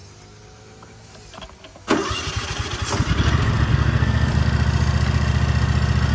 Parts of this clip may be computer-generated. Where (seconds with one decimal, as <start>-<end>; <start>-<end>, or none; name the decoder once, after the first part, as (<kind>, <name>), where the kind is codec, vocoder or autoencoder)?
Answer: 3.7-4.4 (codec, SNAC)